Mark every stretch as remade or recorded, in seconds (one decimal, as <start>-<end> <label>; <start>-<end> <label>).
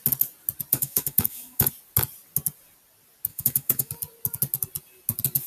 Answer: 0.0-0.7 recorded; 0.7-1.7 remade; 1.7-3.3 recorded; 3.3-3.9 remade; 3.9-5.5 recorded